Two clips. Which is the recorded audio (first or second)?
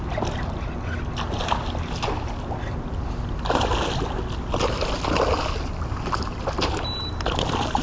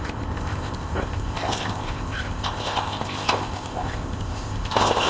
first